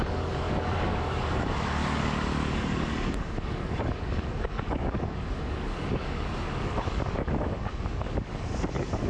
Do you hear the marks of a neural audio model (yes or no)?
yes